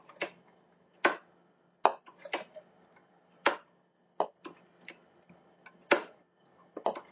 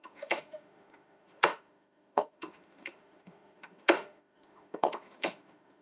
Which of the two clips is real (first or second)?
first